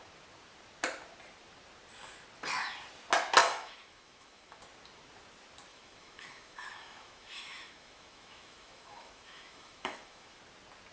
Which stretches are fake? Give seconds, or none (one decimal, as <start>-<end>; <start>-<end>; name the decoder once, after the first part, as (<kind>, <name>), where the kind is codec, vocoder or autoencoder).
3.4-4.6 (autoencoder, DAC-VAE); 5.7-10.4